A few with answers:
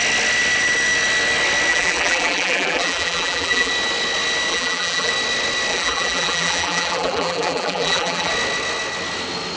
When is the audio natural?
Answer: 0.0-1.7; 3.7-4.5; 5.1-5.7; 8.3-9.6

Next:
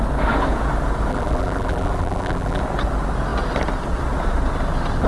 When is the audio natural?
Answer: 0.0-1.1; 2.6-5.1

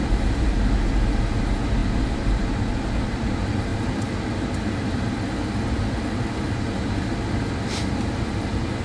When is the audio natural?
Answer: 0.0-8.8

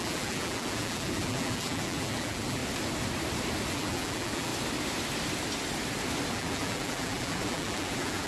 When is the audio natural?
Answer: 2.6-3.7; 4.5-6.3